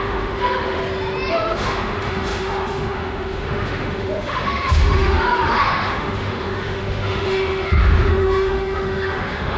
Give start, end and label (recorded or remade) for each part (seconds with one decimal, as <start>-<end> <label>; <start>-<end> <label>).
0.0-0.8 remade; 0.8-1.3 recorded; 1.3-9.6 remade